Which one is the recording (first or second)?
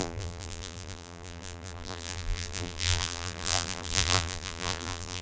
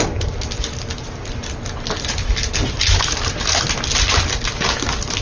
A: second